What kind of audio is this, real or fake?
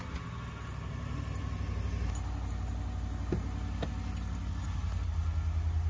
real